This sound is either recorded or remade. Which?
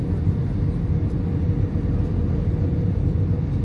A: recorded